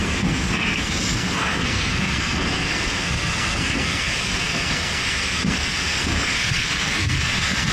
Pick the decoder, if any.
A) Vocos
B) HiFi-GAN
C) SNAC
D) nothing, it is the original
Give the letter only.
C